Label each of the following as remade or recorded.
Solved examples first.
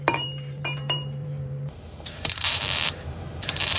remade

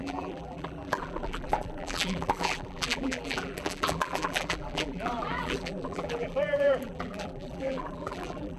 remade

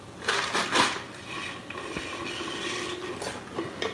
recorded